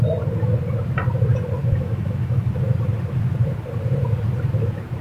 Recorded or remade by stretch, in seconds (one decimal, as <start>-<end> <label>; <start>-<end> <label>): 0.0-1.6 recorded; 1.6-2.5 remade; 2.5-5.0 recorded